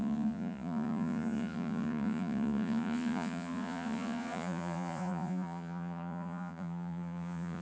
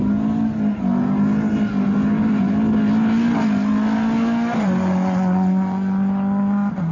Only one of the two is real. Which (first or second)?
second